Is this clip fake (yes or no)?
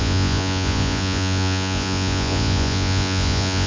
yes